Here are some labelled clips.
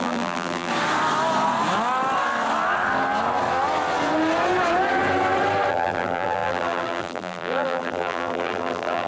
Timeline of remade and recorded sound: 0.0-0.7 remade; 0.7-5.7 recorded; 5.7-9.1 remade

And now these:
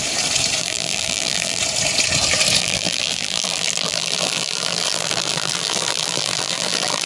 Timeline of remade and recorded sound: 0.0-0.6 recorded; 0.6-1.6 remade; 1.6-2.6 recorded; 2.6-7.1 remade

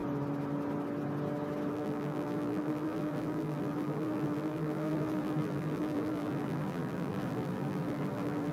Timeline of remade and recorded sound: 0.0-1.7 recorded; 1.7-8.5 remade